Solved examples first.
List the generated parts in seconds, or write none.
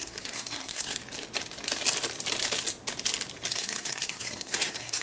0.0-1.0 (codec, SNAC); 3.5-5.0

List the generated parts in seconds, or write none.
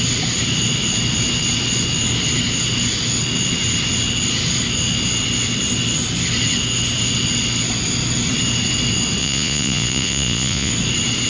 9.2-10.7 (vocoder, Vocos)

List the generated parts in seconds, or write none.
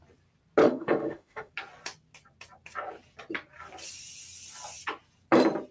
0.6-1.5 (autoencoder, DAC-VAE)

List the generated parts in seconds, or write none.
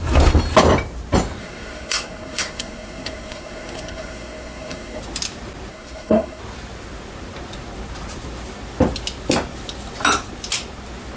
1.4-5.0 (codec, SNAC); 5.7-6.4